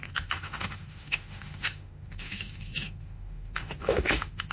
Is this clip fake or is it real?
fake